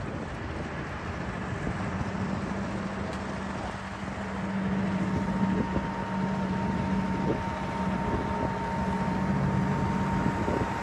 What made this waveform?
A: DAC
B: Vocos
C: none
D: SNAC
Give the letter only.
C